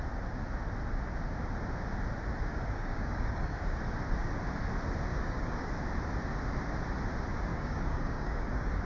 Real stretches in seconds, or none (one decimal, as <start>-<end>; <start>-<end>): 0.0-2.5; 3.8-5.1; 5.7-7.5